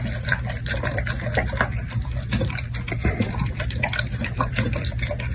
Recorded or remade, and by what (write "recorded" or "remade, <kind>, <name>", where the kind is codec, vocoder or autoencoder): remade, vocoder, BigVGAN v2